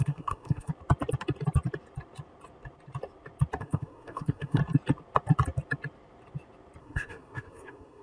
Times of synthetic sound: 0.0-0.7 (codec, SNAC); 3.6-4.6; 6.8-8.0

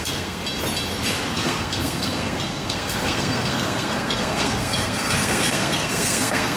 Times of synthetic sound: 0.0-0.4 (codec, SNAC); 1.3-6.6

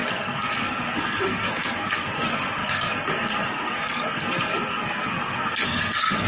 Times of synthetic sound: 0.0-6.3 (codec, SNAC)

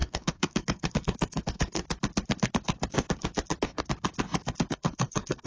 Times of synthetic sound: 0.0-1.8 (codec, SNAC); 4.7-5.5

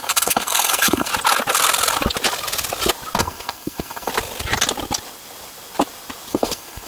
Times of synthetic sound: 0.0-1.1 (codec, SNAC); 3.2-4.1; 6.3-6.9